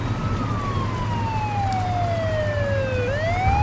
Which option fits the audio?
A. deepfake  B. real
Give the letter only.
B